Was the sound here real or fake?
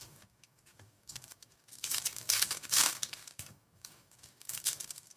fake